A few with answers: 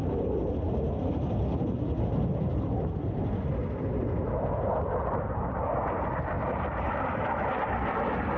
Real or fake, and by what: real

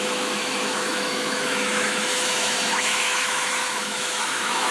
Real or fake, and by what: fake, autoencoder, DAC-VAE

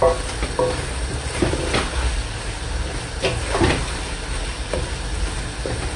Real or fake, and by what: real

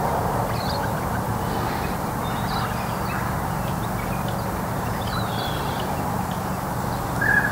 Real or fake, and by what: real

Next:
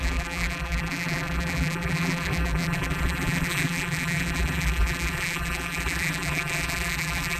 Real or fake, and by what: fake, vocoder, BigVGAN v2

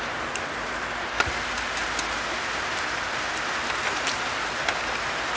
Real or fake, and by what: real